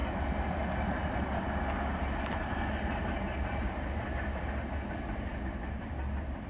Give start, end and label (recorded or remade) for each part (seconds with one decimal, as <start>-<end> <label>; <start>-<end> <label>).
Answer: 0.0-6.5 recorded